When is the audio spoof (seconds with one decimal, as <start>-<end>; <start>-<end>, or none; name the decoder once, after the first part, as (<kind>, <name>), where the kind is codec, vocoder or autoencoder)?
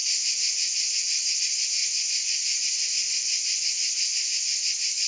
1.4-1.8 (vocoder, Vocos)